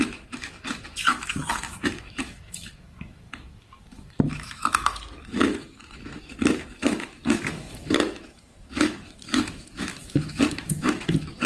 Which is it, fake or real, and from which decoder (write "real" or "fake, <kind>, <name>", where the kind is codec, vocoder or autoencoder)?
fake, autoencoder, DAC-VAE